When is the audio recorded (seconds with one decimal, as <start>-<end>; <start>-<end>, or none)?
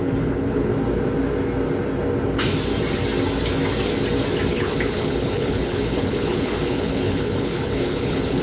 0.7-4.5